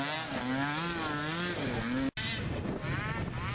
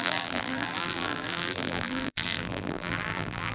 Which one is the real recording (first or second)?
first